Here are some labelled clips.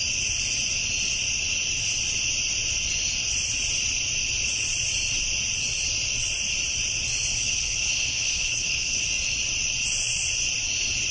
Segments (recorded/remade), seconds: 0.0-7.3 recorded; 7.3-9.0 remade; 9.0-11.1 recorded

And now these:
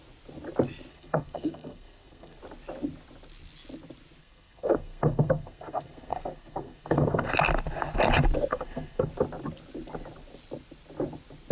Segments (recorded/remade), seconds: 0.0-0.9 recorded; 0.9-2.4 remade; 2.4-4.2 recorded; 4.2-7.3 remade; 7.3-8.5 recorded; 8.5-9.1 remade; 9.1-11.5 recorded

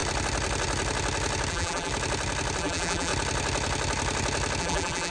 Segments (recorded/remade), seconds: 0.0-1.5 recorded; 1.5-1.9 remade; 1.9-2.6 recorded; 2.6-3.1 remade; 3.1-4.6 recorded; 4.6-5.1 remade

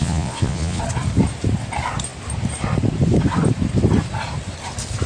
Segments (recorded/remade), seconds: 0.0-0.8 remade; 0.8-5.1 recorded

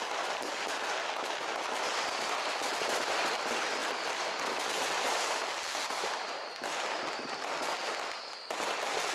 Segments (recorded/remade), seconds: 0.0-9.1 recorded

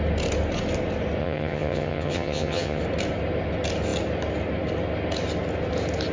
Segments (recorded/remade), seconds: 0.0-1.2 recorded; 1.2-2.8 remade; 2.8-6.1 recorded

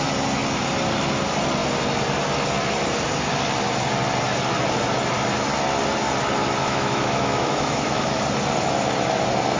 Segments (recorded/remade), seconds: 0.0-6.6 recorded; 6.6-8.2 remade; 8.2-9.6 recorded

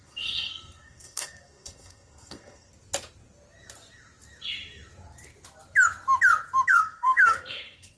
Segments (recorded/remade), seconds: 0.0-2.7 remade; 2.7-6.7 recorded; 6.7-8.0 remade